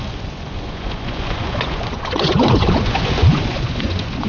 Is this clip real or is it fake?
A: fake